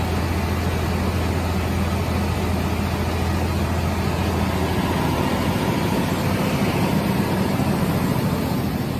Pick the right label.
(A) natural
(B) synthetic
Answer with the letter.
A